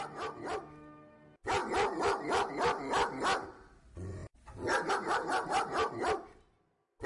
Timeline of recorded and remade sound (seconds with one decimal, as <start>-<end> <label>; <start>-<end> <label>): 0.0-7.1 recorded